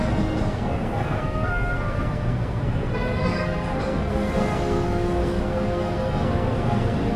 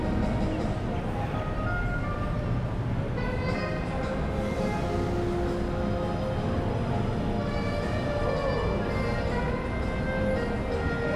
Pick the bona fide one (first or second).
second